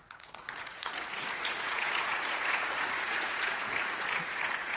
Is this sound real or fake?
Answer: fake